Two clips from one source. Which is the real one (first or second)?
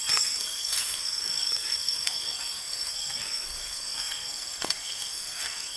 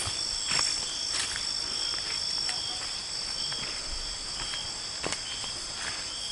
second